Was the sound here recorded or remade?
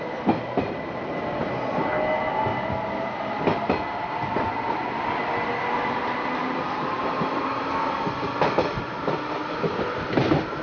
recorded